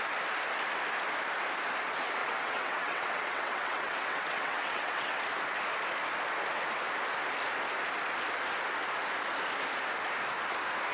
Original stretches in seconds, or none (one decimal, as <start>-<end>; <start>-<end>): 0.0-2.2; 5.2-10.9